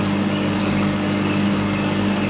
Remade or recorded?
remade